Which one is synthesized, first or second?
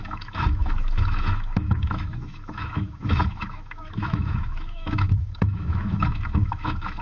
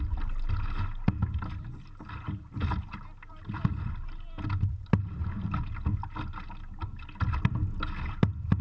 first